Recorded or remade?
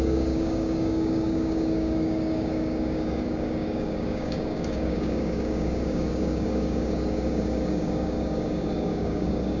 remade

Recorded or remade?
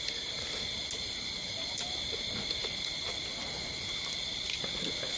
recorded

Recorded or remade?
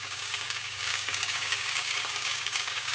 remade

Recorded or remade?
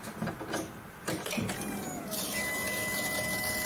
recorded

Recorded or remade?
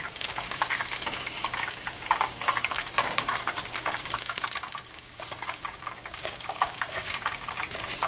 remade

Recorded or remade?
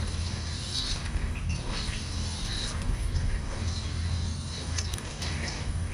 remade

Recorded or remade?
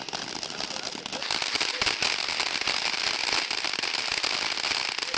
recorded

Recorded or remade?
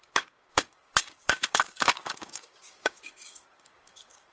remade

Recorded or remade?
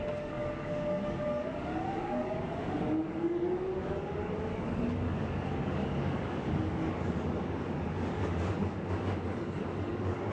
remade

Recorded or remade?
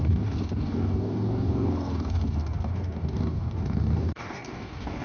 remade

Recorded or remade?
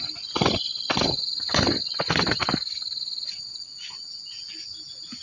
recorded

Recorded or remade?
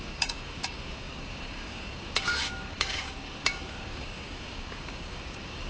remade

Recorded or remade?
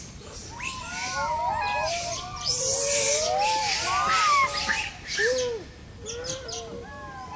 recorded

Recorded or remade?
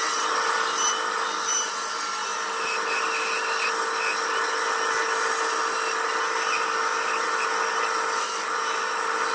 recorded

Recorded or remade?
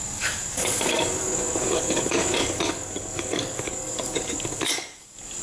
remade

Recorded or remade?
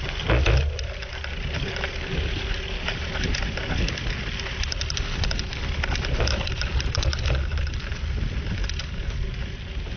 recorded